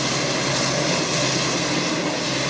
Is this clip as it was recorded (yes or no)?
yes